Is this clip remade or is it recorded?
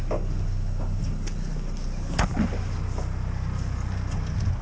recorded